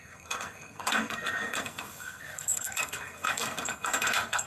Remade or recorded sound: remade